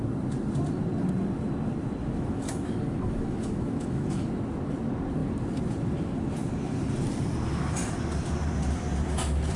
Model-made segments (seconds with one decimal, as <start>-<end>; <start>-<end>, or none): 2.0-4.3